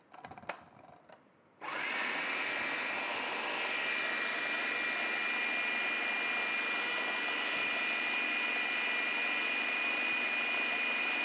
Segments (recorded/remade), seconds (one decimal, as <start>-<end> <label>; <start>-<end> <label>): 0.0-2.0 recorded; 2.0-2.5 remade; 2.5-11.2 recorded